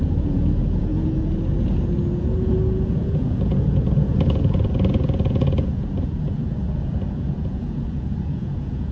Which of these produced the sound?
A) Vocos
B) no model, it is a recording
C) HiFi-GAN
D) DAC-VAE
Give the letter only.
A